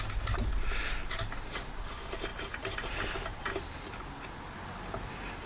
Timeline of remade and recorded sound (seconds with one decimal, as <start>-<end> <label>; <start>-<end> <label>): 0.0-5.5 recorded